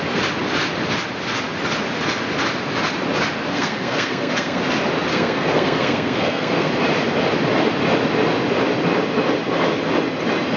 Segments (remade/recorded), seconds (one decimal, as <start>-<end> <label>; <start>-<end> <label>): 0.0-3.5 recorded; 3.5-4.6 remade; 4.6-5.1 recorded; 5.1-6.7 remade; 6.7-10.6 recorded